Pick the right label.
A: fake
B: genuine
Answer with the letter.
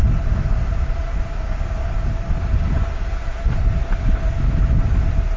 B